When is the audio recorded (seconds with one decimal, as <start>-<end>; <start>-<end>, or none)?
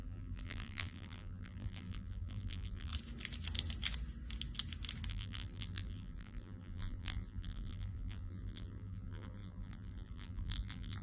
2.9-5.1